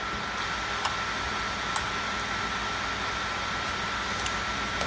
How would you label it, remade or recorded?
recorded